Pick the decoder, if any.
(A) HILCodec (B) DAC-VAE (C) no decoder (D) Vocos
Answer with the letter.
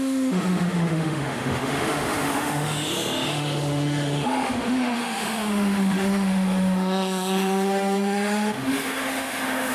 B